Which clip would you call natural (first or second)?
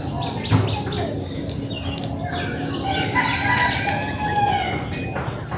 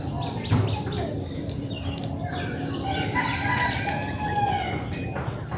first